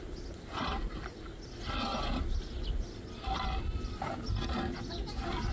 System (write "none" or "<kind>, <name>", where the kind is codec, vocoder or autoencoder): none